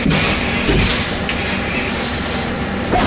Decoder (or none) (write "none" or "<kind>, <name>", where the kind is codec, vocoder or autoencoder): none